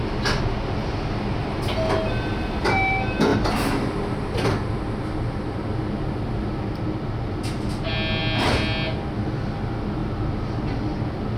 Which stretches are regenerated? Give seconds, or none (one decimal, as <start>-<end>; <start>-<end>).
none